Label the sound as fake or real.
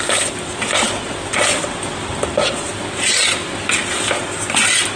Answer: real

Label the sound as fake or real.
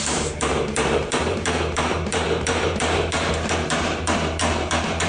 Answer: fake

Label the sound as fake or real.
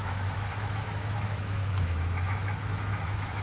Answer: fake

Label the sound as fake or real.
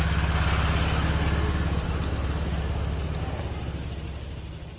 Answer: real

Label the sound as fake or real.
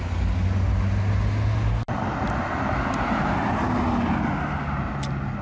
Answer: real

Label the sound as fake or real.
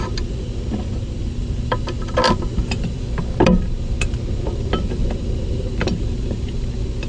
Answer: real